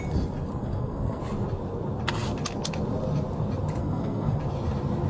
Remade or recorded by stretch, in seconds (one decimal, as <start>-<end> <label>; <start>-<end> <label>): 0.0-0.6 recorded; 0.6-1.2 remade; 1.2-3.8 recorded; 3.8-4.4 remade; 4.4-5.1 recorded